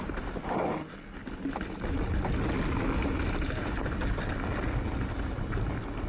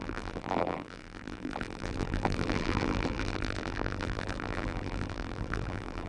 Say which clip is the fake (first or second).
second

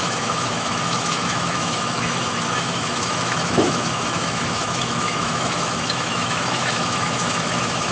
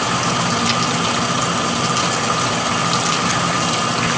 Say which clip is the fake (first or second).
first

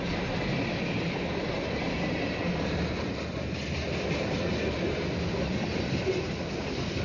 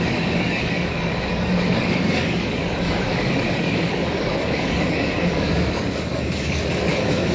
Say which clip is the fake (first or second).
second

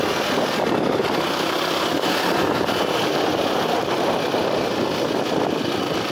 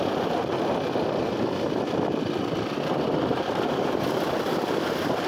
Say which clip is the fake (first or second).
second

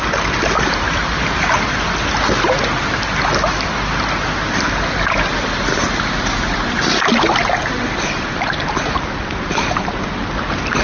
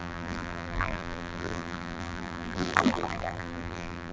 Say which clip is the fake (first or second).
second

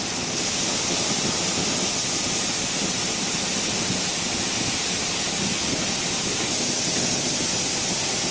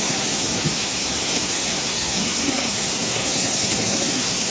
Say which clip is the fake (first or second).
second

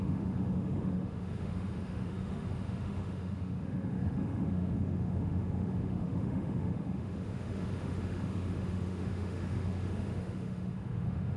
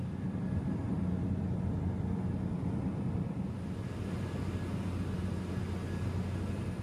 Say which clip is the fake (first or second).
first